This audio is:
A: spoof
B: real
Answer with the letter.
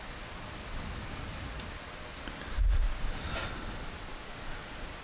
B